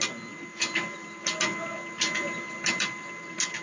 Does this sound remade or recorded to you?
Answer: recorded